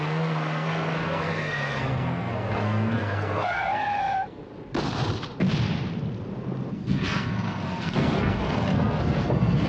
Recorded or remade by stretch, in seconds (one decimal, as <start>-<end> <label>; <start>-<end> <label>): 0.0-4.4 remade; 4.4-6.7 recorded; 6.7-9.7 remade